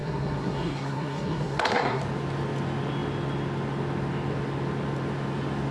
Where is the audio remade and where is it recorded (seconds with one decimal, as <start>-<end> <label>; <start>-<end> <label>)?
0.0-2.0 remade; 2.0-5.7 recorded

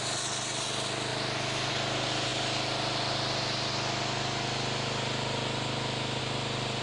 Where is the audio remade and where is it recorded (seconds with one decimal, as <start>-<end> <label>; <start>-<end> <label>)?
0.0-6.8 recorded

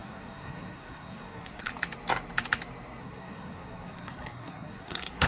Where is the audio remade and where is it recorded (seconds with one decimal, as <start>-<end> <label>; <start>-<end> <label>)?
0.0-1.7 remade; 1.7-3.0 recorded; 3.0-5.3 remade

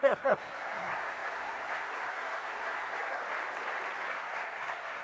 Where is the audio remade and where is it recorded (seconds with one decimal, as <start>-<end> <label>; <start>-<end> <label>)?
0.0-3.2 remade; 3.2-4.1 recorded; 4.1-5.0 remade